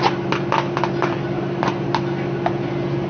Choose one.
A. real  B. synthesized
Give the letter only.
A